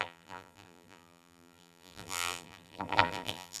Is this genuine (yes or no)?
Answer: no